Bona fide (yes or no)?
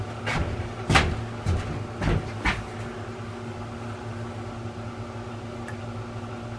yes